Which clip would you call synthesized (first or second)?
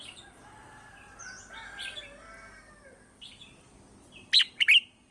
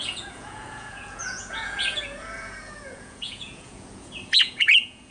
second